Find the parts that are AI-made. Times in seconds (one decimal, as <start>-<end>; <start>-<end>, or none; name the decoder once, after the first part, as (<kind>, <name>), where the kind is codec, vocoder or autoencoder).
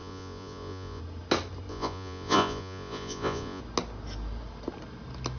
0.0-1.0 (vocoder, Vocos); 1.7-3.6